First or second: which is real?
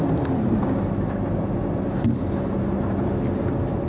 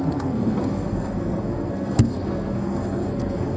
first